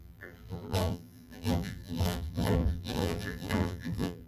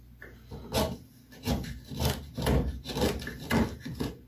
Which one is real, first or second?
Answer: second